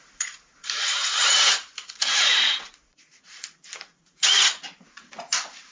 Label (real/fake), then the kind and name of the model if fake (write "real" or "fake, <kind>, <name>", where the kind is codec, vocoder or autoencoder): fake, vocoder, Vocos